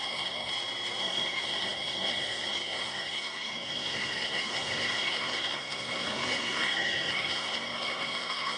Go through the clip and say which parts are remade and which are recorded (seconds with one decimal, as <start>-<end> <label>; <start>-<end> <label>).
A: 0.0-0.5 remade; 0.5-1.0 recorded; 1.0-8.6 remade